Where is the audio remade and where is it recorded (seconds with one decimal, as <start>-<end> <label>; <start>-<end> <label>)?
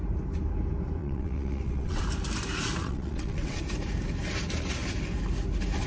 0.0-1.0 recorded; 1.0-2.0 remade; 2.0-2.8 recorded; 2.8-3.6 remade; 3.6-5.9 recorded